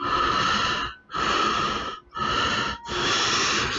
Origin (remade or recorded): recorded